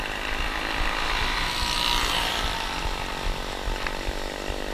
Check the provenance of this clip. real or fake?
real